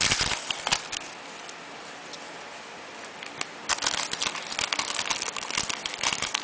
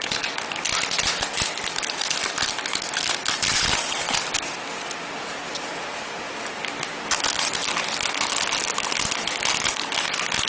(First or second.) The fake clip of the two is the first